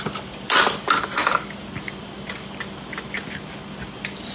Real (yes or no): yes